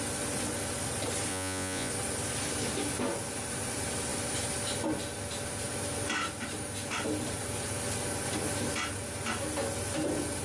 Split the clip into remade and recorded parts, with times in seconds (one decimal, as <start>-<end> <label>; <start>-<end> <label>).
0.0-1.3 recorded; 1.3-1.9 remade; 1.9-10.4 recorded